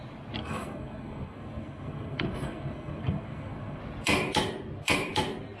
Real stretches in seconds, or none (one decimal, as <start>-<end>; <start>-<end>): 0.0-0.4; 3.8-5.6